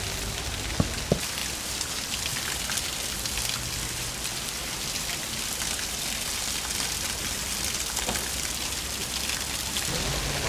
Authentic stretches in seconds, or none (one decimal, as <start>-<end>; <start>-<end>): 0.0-10.5